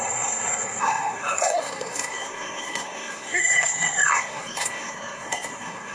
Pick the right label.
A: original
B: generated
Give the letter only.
B